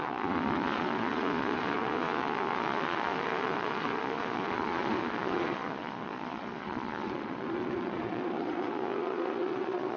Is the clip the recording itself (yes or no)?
no